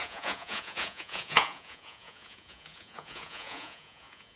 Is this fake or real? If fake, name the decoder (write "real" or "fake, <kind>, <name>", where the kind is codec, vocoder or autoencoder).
fake, vocoder, Vocos